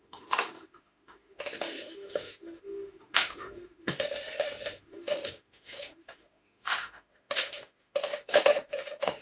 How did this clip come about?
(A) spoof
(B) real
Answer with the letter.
A